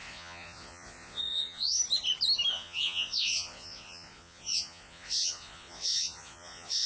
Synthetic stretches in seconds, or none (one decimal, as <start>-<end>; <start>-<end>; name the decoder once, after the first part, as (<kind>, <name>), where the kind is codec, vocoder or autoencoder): 0.0-1.8 (vocoder, Vocos); 2.5-6.9